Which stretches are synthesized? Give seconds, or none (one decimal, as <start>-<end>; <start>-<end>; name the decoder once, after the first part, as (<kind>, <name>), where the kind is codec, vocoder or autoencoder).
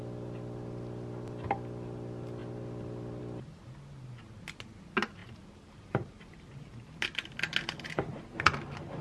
5.2-6.9 (vocoder, BigVGAN v2)